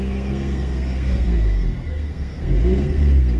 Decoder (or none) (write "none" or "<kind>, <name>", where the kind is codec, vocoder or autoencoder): codec, SNAC